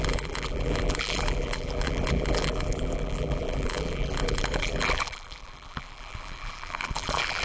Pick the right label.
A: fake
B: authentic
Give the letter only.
A